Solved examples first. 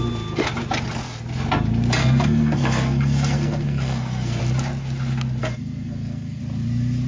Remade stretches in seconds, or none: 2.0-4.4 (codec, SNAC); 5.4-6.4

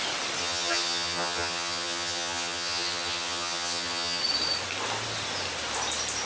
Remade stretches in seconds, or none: 0.4-4.2 (vocoder, HiFi-GAN)